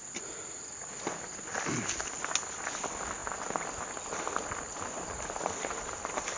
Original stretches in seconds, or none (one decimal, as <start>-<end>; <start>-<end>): 0.0-6.4